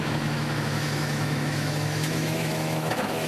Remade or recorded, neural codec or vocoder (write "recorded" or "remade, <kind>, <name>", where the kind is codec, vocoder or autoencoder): remade, autoencoder, DAC-VAE